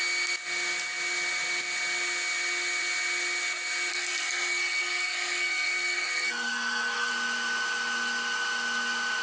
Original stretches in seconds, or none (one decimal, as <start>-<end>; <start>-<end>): 0.0-3.9; 7.1-9.2